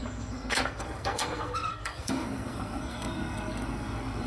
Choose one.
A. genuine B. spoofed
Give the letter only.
B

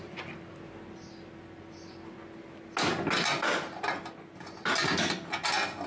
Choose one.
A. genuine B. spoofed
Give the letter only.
A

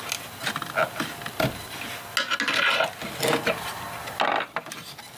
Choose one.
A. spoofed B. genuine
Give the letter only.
B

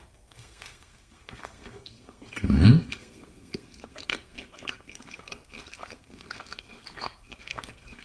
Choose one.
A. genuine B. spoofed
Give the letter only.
B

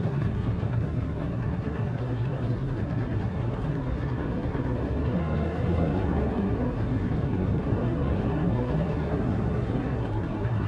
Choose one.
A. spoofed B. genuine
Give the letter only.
A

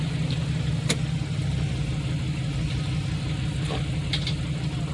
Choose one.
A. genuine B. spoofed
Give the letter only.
A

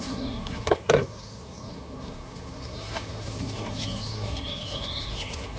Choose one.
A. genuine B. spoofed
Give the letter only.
B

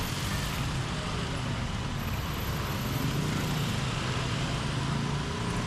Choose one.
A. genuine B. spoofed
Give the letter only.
A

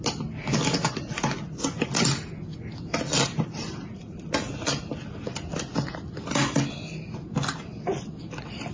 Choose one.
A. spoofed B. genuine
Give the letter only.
B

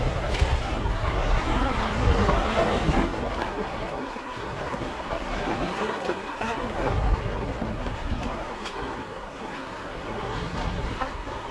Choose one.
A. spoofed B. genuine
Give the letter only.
A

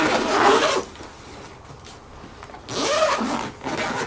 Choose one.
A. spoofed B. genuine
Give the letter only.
B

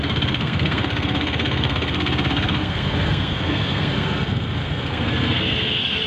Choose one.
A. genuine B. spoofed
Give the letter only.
B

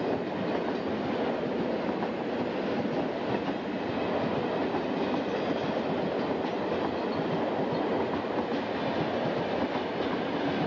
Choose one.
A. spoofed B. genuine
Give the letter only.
B